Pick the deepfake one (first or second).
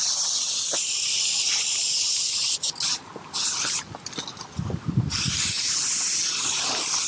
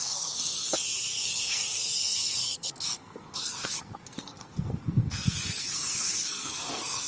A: second